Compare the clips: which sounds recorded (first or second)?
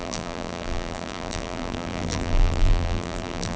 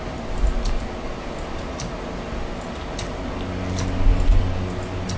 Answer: second